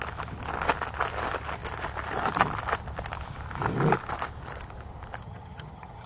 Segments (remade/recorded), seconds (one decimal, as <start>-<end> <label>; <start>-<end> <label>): 0.0-5.2 recorded; 5.2-6.1 remade